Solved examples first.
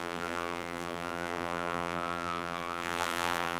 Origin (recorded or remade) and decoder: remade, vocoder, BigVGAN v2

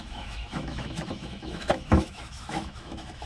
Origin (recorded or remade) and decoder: remade, autoencoder, DAC-VAE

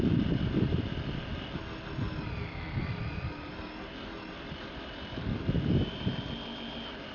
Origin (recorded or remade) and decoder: recorded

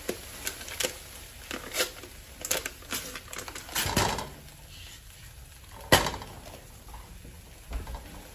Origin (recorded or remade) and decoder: recorded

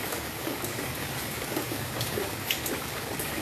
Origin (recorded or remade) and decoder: remade, codec, DAC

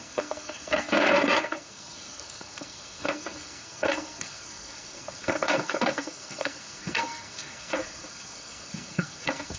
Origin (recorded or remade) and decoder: remade, codec, SNAC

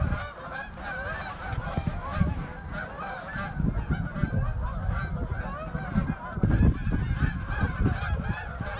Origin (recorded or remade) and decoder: recorded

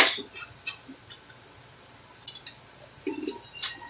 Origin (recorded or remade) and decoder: recorded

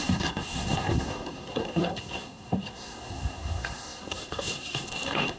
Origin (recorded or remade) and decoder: remade, codec, SNAC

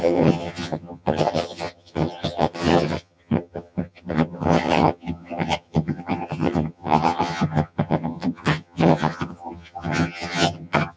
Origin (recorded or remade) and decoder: remade, vocoder, HiFi-GAN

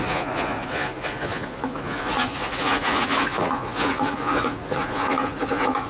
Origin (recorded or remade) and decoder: remade, vocoder, Vocos